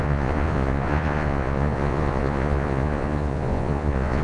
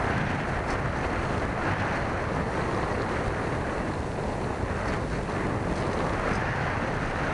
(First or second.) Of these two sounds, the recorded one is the second